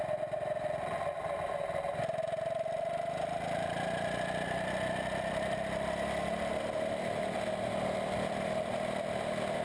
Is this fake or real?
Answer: real